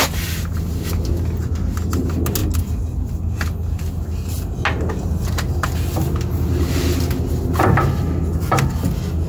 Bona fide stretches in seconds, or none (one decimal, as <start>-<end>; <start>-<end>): 0.0-9.3